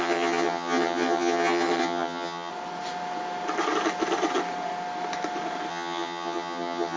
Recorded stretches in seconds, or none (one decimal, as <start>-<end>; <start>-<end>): 2.5-5.7